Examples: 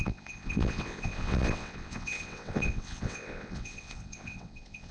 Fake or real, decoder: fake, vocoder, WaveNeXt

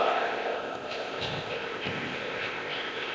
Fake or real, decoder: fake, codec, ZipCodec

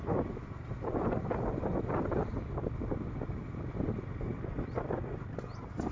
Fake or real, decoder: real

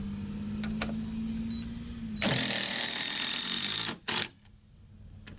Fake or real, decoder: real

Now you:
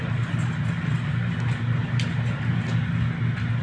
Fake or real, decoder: real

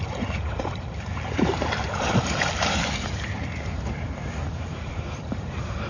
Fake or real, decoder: fake, vocoder, BigVGAN v2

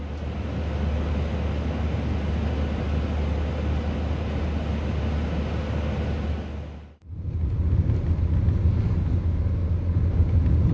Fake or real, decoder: real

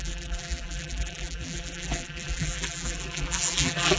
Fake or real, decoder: fake, vocoder, BigVGAN v2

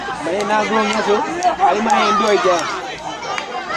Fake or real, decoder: real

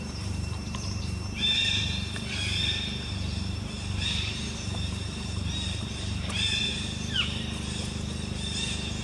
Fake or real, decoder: fake, vocoder, BigVGAN v2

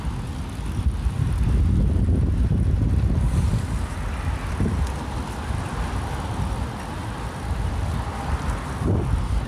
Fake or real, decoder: real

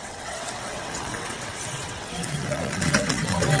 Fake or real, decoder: fake, vocoder, WaveNeXt